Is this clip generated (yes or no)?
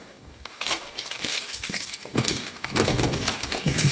yes